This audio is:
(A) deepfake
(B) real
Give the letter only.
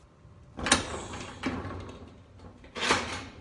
B